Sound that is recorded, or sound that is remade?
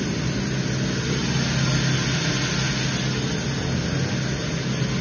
recorded